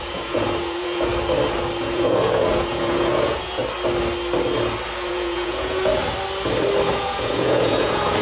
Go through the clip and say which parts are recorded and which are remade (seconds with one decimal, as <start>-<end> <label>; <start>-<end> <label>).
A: 0.0-1.1 remade; 1.1-1.8 recorded; 1.8-3.6 remade; 3.6-5.1 recorded; 5.1-5.9 remade; 5.9-6.9 recorded; 6.9-8.2 remade